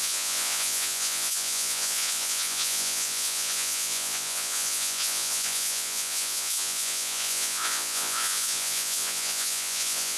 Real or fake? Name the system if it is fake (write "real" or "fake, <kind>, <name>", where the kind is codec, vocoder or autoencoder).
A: fake, vocoder, Vocos